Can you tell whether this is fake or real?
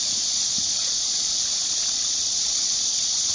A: fake